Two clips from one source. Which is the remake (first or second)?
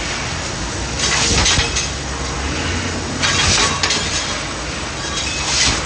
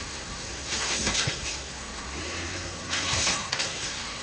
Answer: second